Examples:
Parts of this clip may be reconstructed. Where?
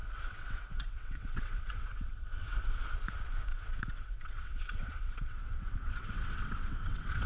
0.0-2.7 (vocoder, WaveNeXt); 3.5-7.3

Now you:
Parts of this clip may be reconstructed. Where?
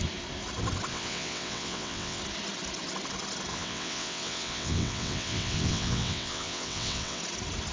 0.9-2.2 (vocoder, WaveNeXt); 3.5-7.2